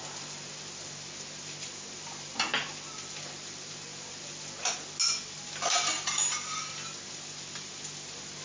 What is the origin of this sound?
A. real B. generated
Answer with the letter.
A